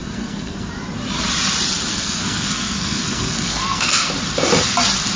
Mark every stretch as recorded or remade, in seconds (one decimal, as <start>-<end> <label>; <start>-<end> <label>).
0.0-0.7 remade; 0.7-1.9 recorded; 1.9-4.1 remade; 4.1-5.2 recorded